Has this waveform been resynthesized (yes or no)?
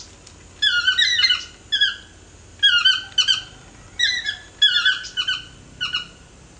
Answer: no